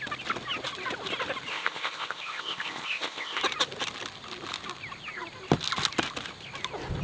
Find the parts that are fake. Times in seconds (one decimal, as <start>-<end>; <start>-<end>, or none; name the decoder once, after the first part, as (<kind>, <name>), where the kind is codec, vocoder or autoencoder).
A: 1.5-3.4 (codec, ZipCodec)